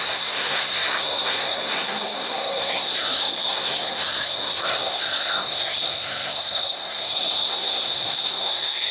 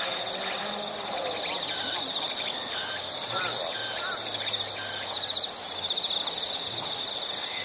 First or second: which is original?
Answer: second